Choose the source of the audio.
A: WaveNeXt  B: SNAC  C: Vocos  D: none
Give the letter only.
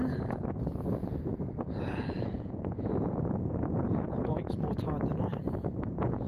C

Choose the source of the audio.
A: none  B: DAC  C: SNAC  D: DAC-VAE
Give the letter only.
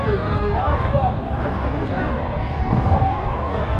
B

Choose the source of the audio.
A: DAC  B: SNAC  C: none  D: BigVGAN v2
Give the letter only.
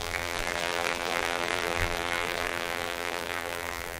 D